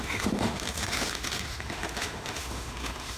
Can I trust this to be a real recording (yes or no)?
no